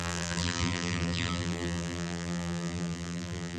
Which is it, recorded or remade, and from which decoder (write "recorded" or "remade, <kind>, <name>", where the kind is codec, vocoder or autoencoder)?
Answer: remade, vocoder, BigVGAN v2